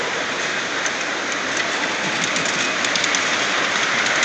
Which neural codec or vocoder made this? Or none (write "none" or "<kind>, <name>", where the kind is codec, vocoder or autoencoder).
vocoder, BigVGAN v2